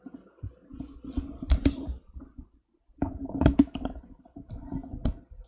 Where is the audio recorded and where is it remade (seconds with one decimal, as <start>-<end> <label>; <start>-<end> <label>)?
0.0-0.7 remade; 0.7-1.3 recorded; 1.3-4.8 remade; 4.8-5.5 recorded